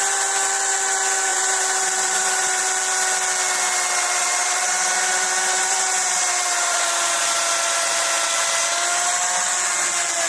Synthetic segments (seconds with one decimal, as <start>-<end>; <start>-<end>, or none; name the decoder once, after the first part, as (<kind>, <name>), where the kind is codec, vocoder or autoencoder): 1.3-2.6 (vocoder, BigVGAN v2); 4.4-6.9